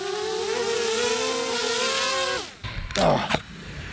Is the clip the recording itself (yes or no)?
yes